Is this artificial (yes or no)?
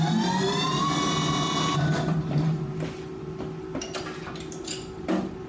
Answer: no